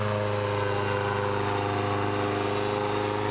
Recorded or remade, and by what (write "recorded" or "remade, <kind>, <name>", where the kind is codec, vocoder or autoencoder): recorded